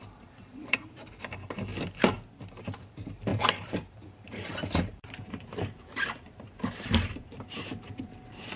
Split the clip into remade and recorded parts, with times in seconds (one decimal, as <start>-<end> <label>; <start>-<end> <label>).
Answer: 0.0-1.7 remade; 1.7-2.6 recorded; 2.6-8.6 remade